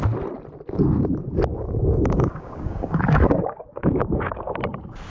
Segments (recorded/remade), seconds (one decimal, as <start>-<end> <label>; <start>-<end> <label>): 0.0-1.5 recorded; 1.5-4.6 remade; 4.6-5.1 recorded